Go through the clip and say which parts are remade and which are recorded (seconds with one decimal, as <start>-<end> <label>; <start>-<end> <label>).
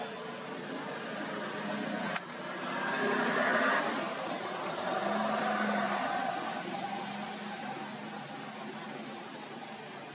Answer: 0.0-10.1 recorded